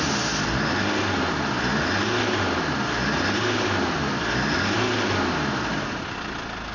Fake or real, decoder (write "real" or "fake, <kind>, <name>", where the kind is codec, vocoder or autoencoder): real